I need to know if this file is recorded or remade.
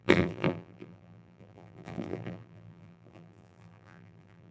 remade